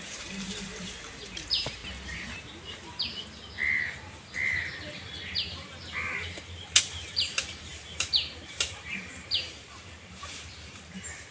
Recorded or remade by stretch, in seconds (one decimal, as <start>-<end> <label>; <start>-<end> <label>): 0.0-1.8 remade; 1.8-6.8 recorded; 6.8-11.3 remade